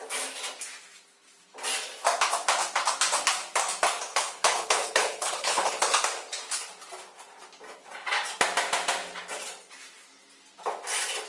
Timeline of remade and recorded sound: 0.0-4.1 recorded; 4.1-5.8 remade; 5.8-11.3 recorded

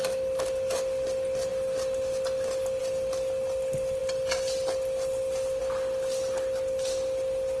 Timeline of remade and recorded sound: 0.0-7.6 recorded

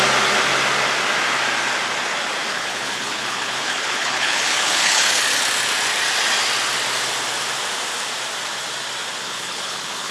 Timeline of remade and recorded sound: 0.0-2.5 recorded; 2.5-5.2 remade; 5.2-9.2 recorded; 9.2-10.1 remade

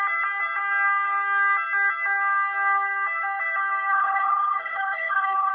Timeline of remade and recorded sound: 0.0-3.9 recorded; 3.9-5.5 remade

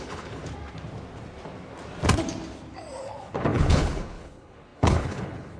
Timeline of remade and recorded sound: 0.0-0.4 remade; 0.4-3.0 recorded; 3.0-5.6 remade

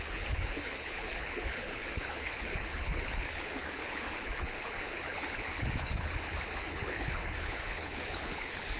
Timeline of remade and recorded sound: 0.0-8.8 remade